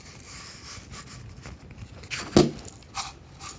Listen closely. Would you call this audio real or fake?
real